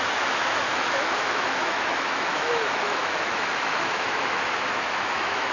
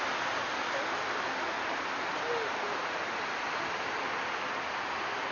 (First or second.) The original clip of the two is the second